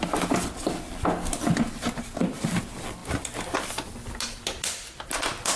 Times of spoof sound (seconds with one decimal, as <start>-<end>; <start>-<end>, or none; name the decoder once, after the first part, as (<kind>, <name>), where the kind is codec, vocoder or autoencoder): none